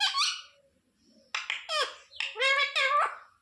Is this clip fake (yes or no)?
no